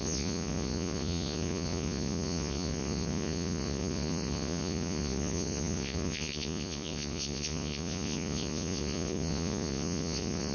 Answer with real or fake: fake